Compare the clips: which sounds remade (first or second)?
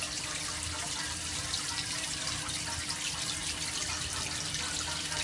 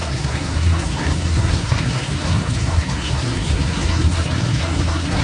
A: second